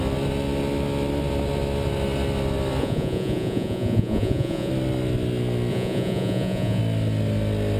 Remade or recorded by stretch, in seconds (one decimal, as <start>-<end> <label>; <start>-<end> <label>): 0.0-2.8 recorded; 2.8-4.7 remade; 4.7-5.7 recorded; 5.7-6.8 remade; 6.8-7.8 recorded